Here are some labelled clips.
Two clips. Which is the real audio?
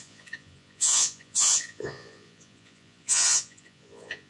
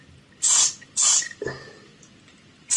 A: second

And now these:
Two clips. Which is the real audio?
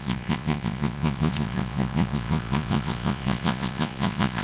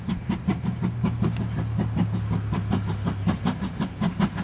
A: second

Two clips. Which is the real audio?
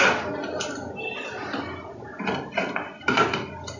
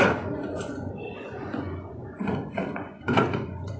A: first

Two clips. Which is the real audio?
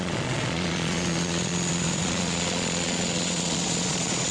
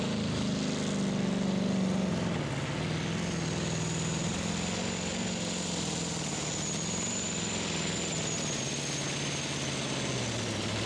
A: second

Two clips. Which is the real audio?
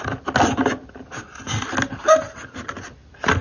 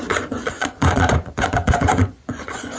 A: first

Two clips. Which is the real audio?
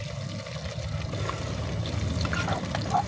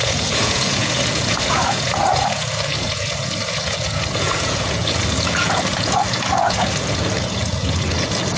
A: first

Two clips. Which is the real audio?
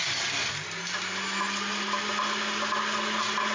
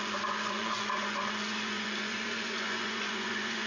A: first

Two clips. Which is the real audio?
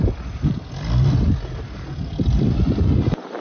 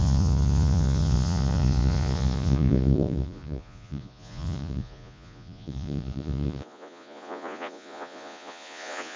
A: first